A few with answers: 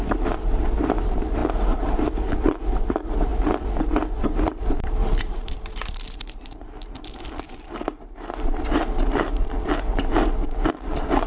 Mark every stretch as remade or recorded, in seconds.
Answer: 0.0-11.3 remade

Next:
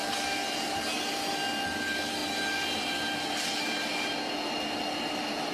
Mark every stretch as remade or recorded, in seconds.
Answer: 0.0-5.5 recorded